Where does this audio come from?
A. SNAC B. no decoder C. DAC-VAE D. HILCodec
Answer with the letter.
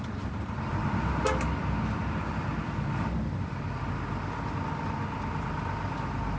B